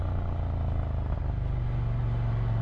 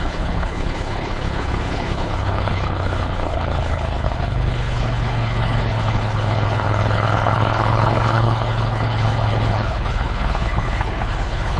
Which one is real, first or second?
first